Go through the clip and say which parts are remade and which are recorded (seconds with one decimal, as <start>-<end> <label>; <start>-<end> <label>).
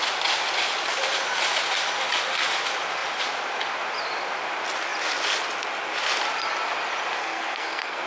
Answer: 0.0-7.2 recorded; 7.2-8.1 remade